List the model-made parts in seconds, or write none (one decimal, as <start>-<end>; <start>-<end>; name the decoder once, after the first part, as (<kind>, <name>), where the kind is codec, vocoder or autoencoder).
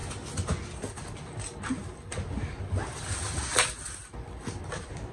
none